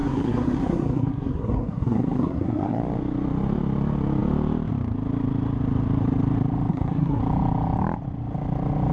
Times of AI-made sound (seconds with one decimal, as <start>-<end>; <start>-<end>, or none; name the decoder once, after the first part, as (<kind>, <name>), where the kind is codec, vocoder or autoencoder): 0.0-2.8 (codec, SNAC); 6.7-7.2